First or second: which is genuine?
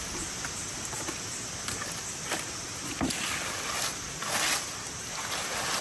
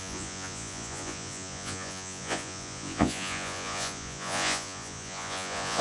first